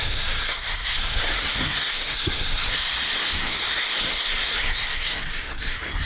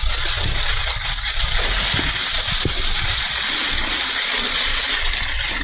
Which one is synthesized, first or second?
first